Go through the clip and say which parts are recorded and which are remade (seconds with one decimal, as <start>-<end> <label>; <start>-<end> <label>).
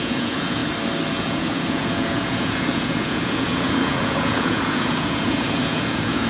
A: 0.0-0.6 remade; 0.6-1.1 recorded; 1.1-6.3 remade